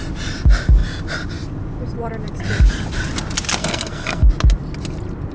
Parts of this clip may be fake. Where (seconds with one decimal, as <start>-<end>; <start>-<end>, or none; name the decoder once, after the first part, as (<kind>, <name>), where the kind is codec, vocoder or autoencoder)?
3.6-4.3 (codec, SNAC)